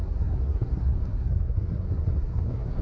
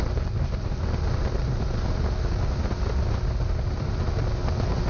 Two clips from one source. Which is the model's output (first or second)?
first